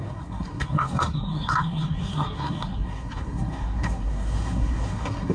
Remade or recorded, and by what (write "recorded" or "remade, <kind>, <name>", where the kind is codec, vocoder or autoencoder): remade, codec, SNAC